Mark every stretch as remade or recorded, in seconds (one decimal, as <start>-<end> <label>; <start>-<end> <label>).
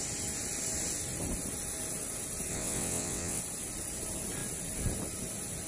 0.0-2.5 recorded; 2.5-3.4 remade; 3.4-5.7 recorded